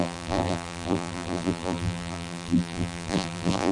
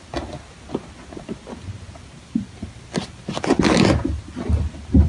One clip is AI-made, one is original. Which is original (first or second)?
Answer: second